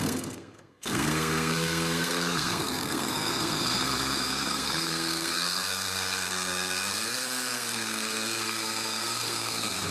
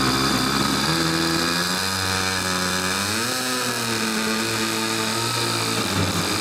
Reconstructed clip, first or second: first